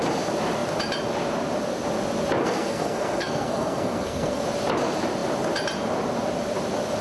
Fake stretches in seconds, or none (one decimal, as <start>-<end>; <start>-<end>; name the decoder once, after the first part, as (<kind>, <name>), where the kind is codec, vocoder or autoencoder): 2.4-4.4 (codec, SNAC)